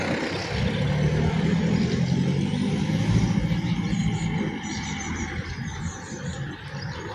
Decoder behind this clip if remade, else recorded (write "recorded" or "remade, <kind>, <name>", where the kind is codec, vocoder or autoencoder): recorded